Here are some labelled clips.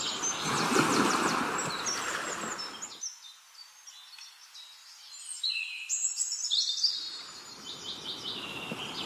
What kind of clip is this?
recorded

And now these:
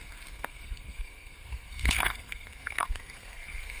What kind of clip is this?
remade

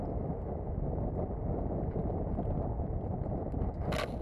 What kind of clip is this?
recorded